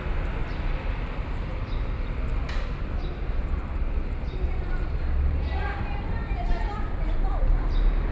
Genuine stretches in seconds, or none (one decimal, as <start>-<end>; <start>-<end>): 0.0-0.4; 0.9-1.5; 5.7-7.4

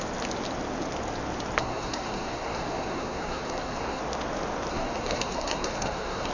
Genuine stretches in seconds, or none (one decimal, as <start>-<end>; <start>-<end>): 0.0-1.6; 4.0-4.7

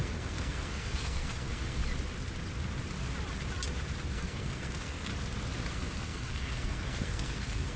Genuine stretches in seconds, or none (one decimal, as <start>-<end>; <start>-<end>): 1.8-4.1; 5.1-5.7

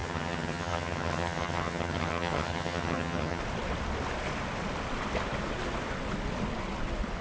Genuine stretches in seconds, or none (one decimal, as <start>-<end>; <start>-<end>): 3.4-7.2

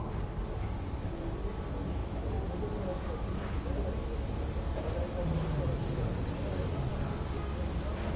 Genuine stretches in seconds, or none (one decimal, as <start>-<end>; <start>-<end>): 0.0-8.2

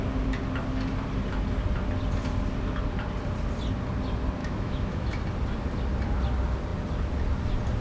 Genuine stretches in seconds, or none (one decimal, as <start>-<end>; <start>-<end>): 0.0-4.4; 5.2-7.8

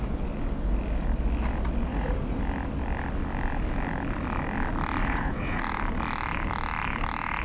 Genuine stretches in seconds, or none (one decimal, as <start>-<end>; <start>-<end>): 0.0-1.9; 2.4-5.0; 5.6-7.4